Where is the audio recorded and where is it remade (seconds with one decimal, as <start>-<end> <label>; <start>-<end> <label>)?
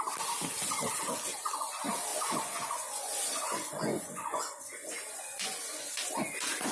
0.0-2.1 recorded; 2.1-5.9 remade; 5.9-6.7 recorded